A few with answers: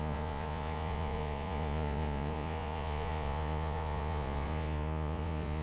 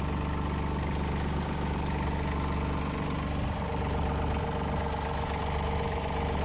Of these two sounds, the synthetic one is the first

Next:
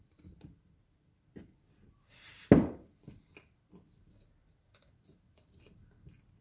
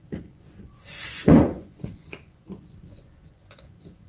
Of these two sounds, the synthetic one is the second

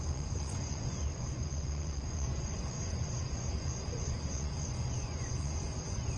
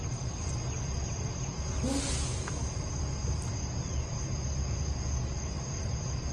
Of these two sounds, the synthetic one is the first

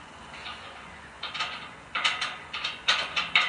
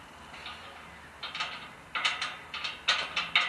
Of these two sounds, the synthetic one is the first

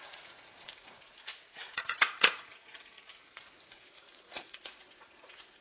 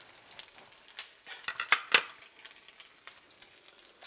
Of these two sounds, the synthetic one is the first